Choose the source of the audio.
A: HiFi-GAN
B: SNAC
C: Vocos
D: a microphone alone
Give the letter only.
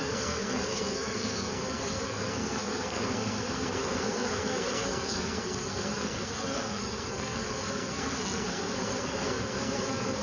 B